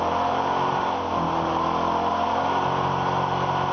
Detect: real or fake real